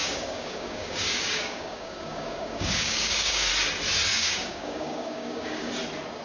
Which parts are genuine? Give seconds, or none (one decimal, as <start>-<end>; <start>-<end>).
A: 3.5-4.1; 5.7-6.2